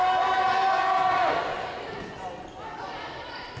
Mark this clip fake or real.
real